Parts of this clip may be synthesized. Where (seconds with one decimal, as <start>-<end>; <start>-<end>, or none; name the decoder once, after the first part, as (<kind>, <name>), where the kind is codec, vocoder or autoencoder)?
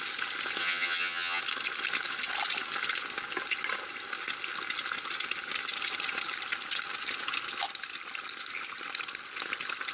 0.6-1.4 (vocoder, HiFi-GAN)